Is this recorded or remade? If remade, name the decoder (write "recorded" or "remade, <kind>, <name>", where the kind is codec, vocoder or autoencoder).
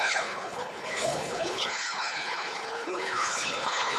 remade, codec, HILCodec